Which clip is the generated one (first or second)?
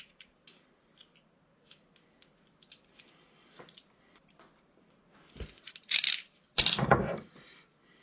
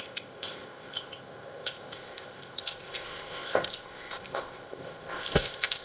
second